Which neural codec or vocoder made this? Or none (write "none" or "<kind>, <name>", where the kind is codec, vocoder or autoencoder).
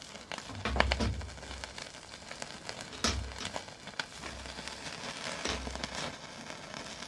none